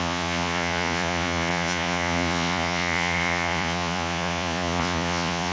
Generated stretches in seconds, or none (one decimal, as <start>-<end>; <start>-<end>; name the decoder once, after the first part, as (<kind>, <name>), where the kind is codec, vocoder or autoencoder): 0.0-5.5 (vocoder, Vocos)

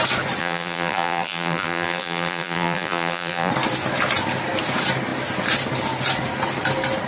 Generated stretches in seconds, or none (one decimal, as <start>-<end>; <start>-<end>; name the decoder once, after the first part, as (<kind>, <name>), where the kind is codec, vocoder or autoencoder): 0.4-3.5 (vocoder, BigVGAN v2)